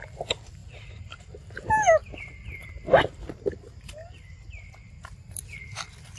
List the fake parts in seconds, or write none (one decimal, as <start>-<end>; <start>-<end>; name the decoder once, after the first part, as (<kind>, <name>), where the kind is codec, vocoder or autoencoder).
none